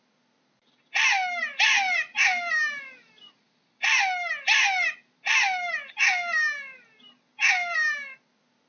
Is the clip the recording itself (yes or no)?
yes